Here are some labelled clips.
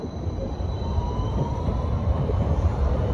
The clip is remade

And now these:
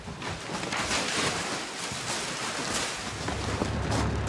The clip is recorded